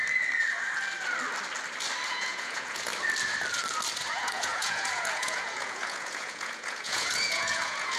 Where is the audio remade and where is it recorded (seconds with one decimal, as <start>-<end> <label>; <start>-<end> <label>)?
0.0-2.1 recorded; 2.1-2.9 remade; 2.9-4.1 recorded; 4.1-8.0 remade